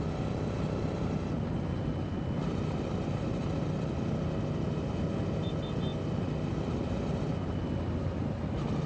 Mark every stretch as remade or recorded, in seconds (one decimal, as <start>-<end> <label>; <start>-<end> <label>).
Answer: 0.0-2.4 recorded; 2.4-3.4 remade; 3.4-8.9 recorded